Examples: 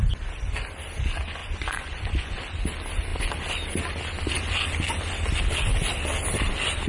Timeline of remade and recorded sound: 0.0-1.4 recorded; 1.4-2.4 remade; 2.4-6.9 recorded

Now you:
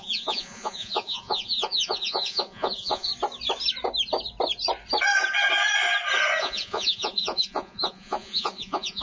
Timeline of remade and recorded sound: 0.0-3.1 remade; 3.1-6.4 recorded; 6.4-9.0 remade

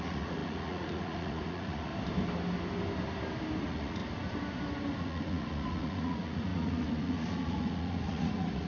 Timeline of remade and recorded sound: 0.0-1.9 remade; 1.9-3.6 recorded; 3.6-4.0 remade; 4.0-5.0 recorded; 5.0-8.7 remade

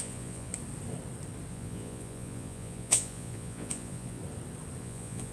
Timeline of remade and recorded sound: 0.0-0.5 remade; 0.5-1.5 recorded; 1.5-4.2 remade; 4.2-4.8 recorded; 4.8-5.3 remade

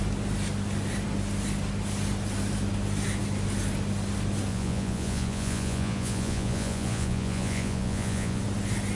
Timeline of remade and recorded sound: 0.0-4.5 recorded; 4.5-8.4 remade; 8.4-9.0 recorded

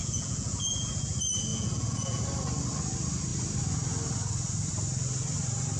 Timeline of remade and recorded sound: 0.0-0.9 remade; 0.9-1.5 recorded; 1.5-2.2 remade; 2.2-5.8 recorded

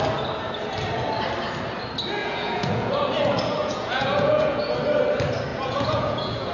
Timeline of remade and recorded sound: 0.0-2.2 recorded; 2.2-2.9 remade; 2.9-3.6 recorded; 3.6-4.6 remade; 4.6-5.5 recorded; 5.5-6.5 remade

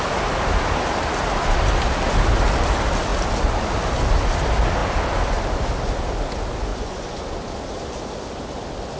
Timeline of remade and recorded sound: 0.0-6.7 recorded; 6.7-7.2 remade; 7.2-9.0 recorded